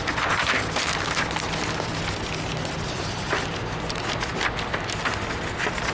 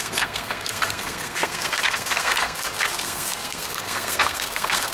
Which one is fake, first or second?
second